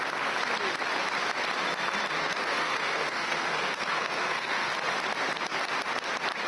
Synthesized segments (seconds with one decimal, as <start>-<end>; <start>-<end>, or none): 2.2-4.7